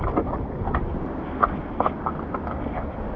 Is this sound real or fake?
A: real